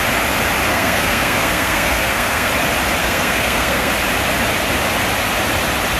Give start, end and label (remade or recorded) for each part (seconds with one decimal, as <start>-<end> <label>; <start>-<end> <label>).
0.0-0.7 recorded; 0.7-2.5 remade; 2.5-3.0 recorded; 3.0-3.9 remade; 3.9-6.0 recorded